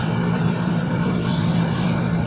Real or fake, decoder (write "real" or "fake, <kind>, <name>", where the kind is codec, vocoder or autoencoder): fake, vocoder, BigVGAN v2